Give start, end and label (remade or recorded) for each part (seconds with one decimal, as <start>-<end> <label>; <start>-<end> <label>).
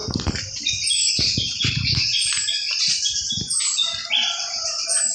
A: 0.0-1.1 remade; 1.1-2.1 recorded; 2.1-3.6 remade; 3.6-5.1 recorded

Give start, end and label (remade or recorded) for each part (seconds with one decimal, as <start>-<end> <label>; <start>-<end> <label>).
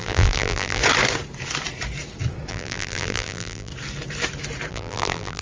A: 0.0-0.8 remade; 0.8-2.5 recorded; 2.5-3.7 remade; 3.7-4.7 recorded; 4.7-5.4 remade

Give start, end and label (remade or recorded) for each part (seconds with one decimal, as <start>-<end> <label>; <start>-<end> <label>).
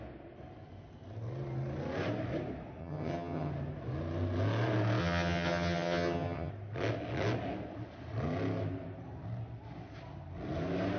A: 0.0-2.8 recorded; 2.8-3.5 remade; 3.5-5.0 recorded; 5.0-6.5 remade; 6.5-11.0 recorded